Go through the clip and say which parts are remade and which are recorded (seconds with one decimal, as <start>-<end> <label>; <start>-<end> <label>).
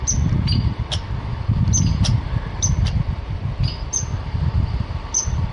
0.0-5.5 recorded